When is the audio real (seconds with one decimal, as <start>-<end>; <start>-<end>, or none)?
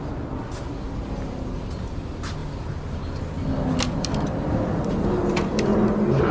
0.0-6.3